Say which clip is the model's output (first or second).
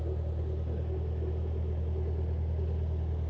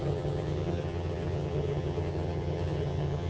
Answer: second